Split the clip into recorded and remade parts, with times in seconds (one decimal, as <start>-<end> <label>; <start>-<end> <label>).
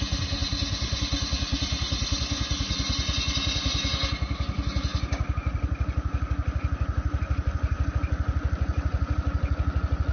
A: 0.0-10.1 recorded